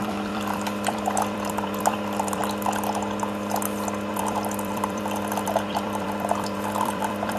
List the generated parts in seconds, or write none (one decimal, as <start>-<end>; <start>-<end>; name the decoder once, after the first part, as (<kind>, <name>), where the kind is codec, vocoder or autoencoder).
0.0-2.4 (vocoder, BigVGAN v2); 4.1-7.4